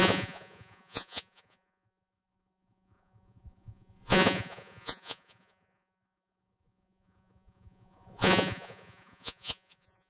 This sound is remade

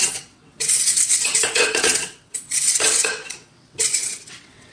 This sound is remade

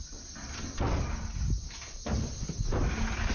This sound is recorded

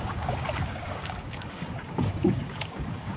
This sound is remade